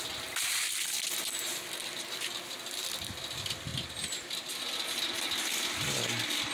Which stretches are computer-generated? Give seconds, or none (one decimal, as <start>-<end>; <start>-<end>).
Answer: none